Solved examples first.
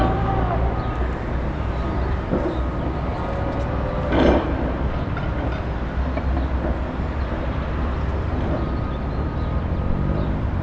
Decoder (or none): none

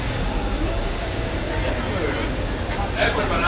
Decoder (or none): none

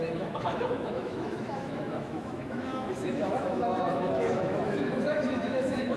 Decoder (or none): autoencoder, DAC-VAE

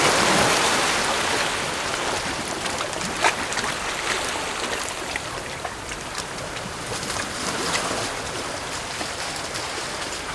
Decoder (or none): none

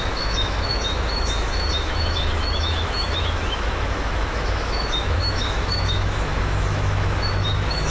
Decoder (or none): autoencoder, DAC-VAE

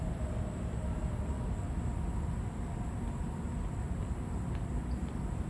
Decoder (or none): none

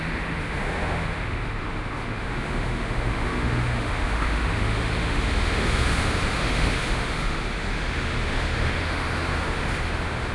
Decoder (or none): autoencoder, DAC-VAE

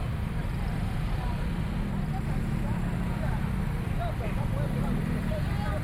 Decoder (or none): none